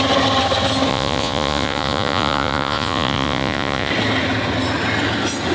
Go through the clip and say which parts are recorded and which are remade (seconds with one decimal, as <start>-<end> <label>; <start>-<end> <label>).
0.0-0.9 recorded; 0.9-3.9 remade; 3.9-5.5 recorded